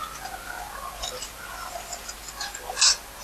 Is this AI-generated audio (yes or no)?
no